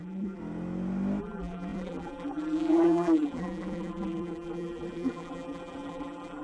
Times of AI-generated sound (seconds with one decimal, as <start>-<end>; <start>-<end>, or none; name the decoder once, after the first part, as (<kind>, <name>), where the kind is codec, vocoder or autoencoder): 0.0-0.4 (vocoder, BigVGAN v2); 1.2-6.4